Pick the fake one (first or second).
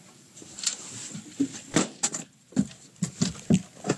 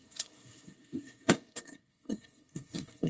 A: second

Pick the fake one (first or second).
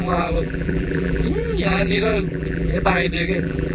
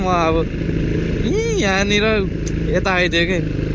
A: first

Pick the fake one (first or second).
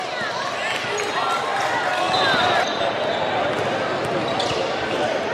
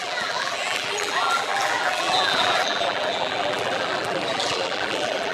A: second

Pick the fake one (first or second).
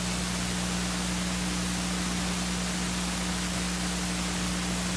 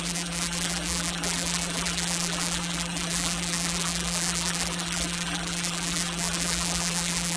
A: second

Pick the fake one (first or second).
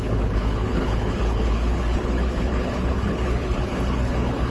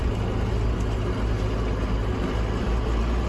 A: first